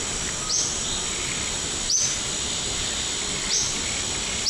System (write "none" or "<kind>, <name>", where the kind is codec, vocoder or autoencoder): none